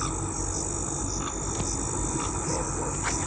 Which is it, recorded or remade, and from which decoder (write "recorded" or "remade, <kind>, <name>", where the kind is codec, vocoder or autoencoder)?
recorded